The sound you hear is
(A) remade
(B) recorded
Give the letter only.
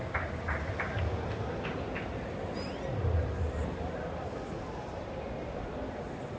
B